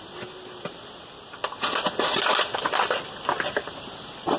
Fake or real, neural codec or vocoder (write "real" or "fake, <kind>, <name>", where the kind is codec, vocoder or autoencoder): real